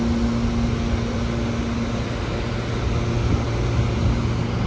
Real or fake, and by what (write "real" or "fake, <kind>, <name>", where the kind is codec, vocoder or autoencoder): real